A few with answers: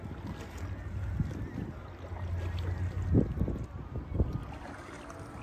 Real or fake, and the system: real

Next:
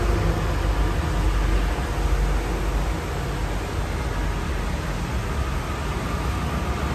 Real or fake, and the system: real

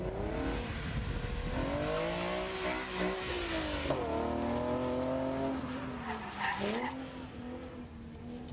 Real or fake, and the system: real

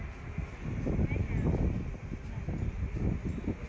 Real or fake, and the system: real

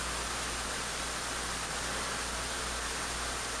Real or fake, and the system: real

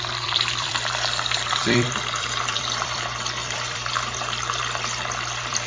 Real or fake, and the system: fake, vocoder, BigVGAN v2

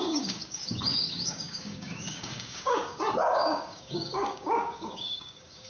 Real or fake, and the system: fake, codec, DAC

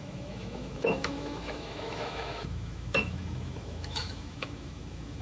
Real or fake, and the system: fake, autoencoder, DAC-VAE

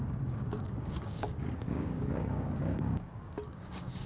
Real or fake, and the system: fake, codec, DAC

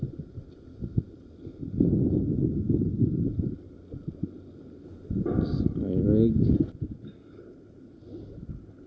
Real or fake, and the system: real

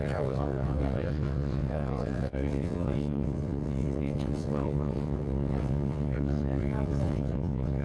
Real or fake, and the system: fake, vocoder, WaveNeXt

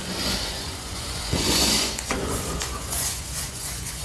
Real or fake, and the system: fake, vocoder, Vocos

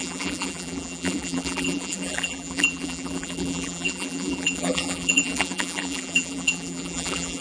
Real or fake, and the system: fake, vocoder, BigVGAN v2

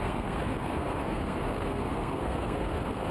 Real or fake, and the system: fake, codec, SNAC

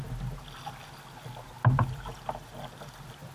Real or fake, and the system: real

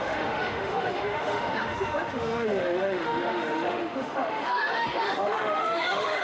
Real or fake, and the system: fake, autoencoder, DAC-VAE